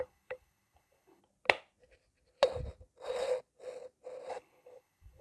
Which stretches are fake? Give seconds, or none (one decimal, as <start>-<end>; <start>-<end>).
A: 0.0-1.2; 4.3-5.2